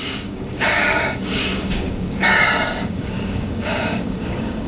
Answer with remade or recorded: remade